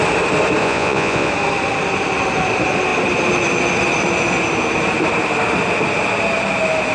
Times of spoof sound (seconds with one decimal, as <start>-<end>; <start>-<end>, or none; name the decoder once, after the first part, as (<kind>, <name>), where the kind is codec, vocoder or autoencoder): 0.6-1.3 (vocoder, Vocos)